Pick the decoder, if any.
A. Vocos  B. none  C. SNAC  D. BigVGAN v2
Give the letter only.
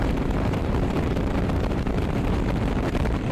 D